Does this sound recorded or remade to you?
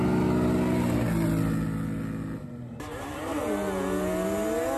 recorded